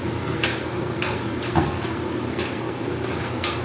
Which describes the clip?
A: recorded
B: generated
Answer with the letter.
B